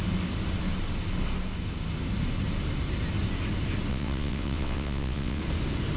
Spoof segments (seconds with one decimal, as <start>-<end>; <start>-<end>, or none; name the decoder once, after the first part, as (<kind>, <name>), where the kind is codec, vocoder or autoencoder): 3.9-5.4 (vocoder, WaveNeXt)